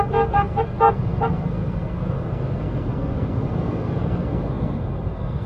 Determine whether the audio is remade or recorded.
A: remade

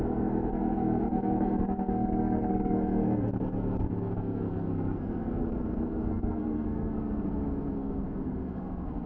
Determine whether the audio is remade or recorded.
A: remade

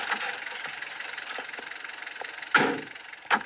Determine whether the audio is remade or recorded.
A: recorded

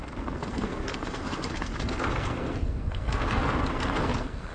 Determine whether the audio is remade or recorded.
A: remade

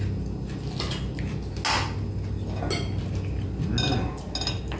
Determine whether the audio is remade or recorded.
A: recorded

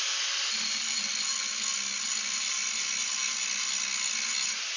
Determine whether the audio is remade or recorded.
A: recorded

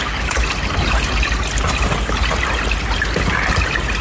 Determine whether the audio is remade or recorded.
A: recorded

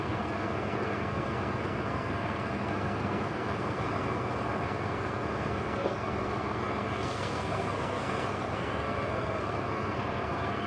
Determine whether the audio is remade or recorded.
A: remade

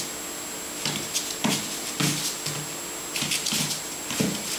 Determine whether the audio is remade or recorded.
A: recorded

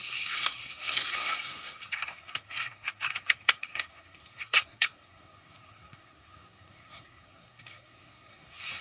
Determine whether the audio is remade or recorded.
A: remade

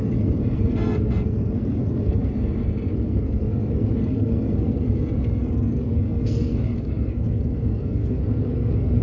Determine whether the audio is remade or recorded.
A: remade